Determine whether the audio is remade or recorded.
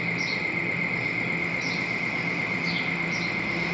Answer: recorded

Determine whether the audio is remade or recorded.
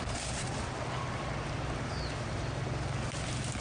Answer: recorded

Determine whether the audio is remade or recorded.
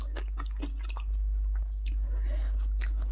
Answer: recorded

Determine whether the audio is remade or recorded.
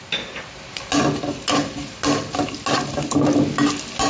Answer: recorded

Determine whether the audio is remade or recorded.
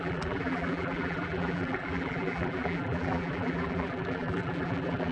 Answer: remade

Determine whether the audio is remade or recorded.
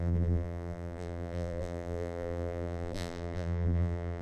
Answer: remade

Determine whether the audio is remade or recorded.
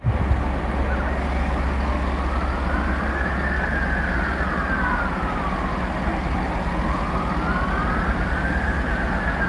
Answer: recorded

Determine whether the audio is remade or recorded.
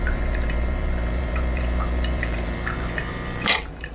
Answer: remade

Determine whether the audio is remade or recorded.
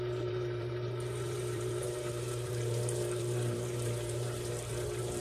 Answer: remade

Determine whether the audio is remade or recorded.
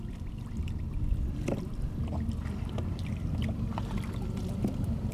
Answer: remade